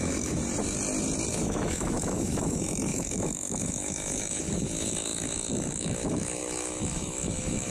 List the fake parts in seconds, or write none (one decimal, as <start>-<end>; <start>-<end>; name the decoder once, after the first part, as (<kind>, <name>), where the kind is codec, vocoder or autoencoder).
0.0-0.4 (autoencoder, DAC-VAE); 1.3-7.7